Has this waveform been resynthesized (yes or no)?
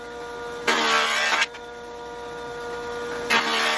no